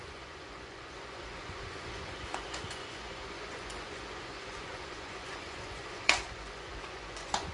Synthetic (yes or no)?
yes